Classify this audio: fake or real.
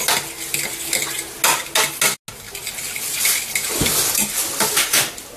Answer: real